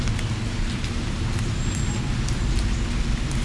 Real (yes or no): yes